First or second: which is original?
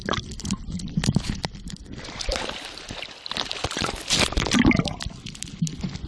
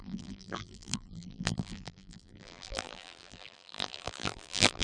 first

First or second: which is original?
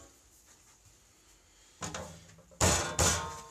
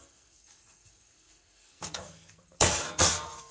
first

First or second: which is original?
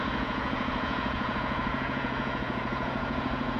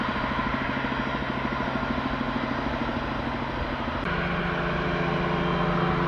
second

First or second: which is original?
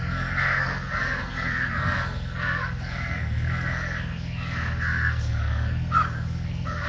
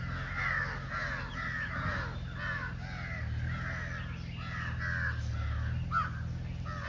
second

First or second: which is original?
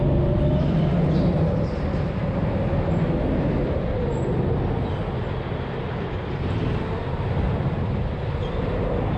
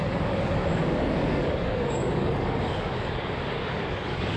first